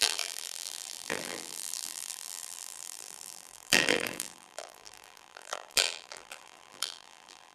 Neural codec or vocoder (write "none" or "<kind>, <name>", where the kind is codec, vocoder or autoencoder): vocoder, BigVGAN v2